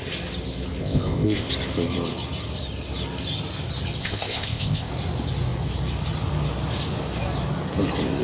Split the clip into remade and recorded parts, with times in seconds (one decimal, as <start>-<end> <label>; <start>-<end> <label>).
0.0-0.8 recorded; 0.8-1.5 remade; 1.5-4.0 recorded; 4.0-4.9 remade; 4.9-8.2 recorded